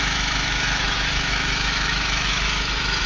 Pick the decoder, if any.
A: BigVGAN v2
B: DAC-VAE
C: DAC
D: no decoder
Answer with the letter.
B